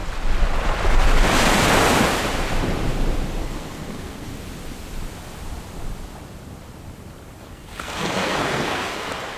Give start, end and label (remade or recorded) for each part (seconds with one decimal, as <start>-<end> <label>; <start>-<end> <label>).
0.0-3.4 recorded; 3.4-4.3 remade; 4.3-7.4 recorded; 7.4-9.4 remade